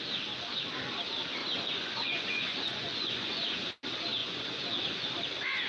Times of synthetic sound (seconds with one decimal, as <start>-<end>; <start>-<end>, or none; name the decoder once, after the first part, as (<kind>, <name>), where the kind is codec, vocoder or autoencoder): 1.4-3.7 (vocoder, Vocos); 4.2-5.1